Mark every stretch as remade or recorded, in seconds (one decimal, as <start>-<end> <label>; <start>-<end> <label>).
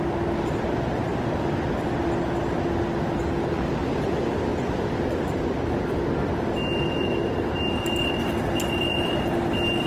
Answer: 0.0-9.9 recorded